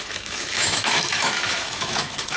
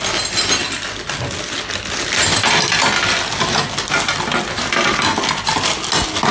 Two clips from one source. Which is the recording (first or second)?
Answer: second